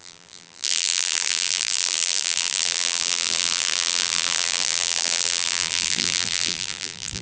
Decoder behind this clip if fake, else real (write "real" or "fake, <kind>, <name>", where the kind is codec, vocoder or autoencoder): fake, vocoder, BigVGAN v2